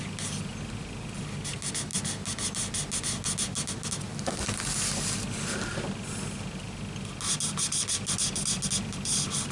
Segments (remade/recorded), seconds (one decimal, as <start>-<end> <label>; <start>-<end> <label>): 0.0-9.5 recorded